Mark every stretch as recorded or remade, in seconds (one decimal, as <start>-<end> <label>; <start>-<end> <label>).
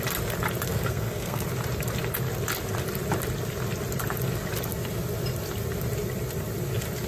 0.0-0.7 recorded; 0.7-1.4 remade; 1.4-7.1 recorded